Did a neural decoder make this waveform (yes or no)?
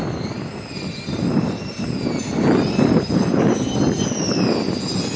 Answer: no